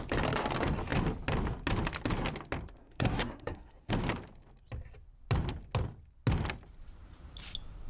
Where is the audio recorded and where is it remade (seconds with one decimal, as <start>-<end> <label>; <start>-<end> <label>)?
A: 0.0-2.8 recorded; 2.8-3.9 remade; 3.9-7.9 recorded